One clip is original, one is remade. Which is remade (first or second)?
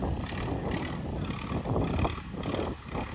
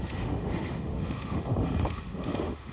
second